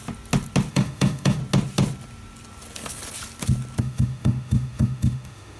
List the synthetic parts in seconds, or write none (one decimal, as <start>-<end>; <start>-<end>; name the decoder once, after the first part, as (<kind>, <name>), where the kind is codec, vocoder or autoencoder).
0.7-1.4 (autoencoder, DAC-VAE); 3.8-5.6